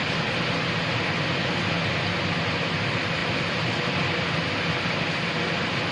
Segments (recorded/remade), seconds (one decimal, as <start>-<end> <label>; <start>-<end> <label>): 0.0-5.9 recorded